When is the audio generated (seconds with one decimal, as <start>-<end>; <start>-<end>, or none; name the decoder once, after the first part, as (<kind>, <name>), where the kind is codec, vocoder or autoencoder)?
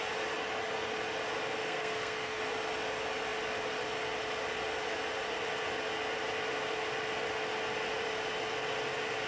1.6-2.4 (codec, SNAC)